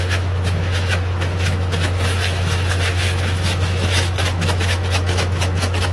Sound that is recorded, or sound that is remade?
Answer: remade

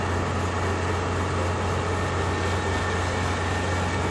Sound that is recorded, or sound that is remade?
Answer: recorded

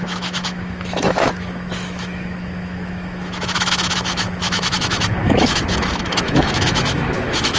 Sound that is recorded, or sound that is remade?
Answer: remade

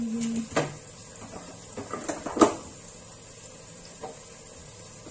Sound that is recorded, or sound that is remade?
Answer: recorded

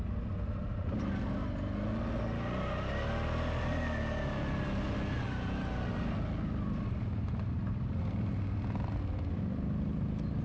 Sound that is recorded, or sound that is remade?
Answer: recorded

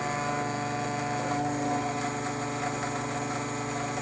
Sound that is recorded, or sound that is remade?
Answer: recorded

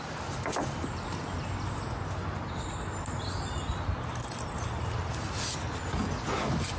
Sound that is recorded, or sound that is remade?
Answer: recorded